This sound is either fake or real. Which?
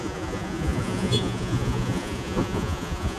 fake